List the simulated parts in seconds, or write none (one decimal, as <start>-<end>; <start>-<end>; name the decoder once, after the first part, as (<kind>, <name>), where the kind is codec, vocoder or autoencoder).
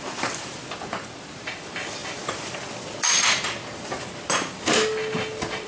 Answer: none